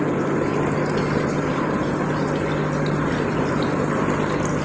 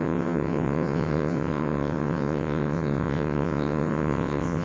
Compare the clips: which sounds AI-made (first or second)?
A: second